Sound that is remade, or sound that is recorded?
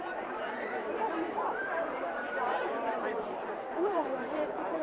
remade